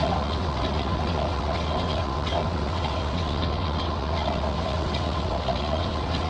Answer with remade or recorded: remade